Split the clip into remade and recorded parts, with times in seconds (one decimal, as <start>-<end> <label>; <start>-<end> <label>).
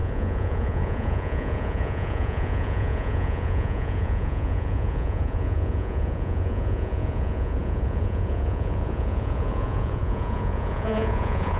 0.0-11.6 remade